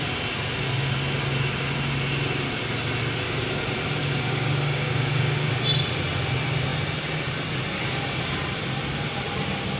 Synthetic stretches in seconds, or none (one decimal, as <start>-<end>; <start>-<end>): 4.0-5.5